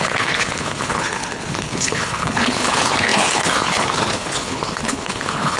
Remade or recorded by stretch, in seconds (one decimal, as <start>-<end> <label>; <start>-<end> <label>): 0.0-5.6 remade